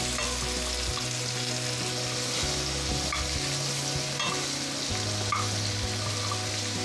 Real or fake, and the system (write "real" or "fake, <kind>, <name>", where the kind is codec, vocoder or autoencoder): real